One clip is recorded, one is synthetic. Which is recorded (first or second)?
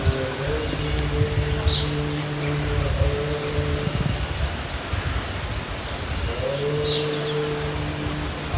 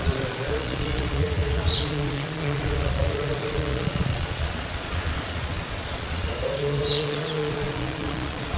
first